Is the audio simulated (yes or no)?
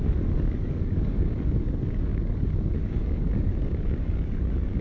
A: yes